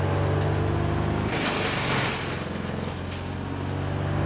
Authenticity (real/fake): real